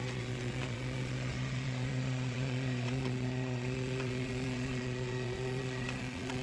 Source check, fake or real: fake